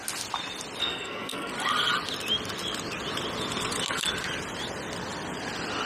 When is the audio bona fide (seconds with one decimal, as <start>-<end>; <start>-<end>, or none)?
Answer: 0.0-0.8; 1.5-5.9